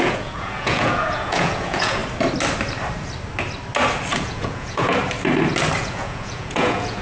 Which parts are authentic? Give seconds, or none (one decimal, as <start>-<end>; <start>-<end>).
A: 2.0-4.2; 5.0-5.8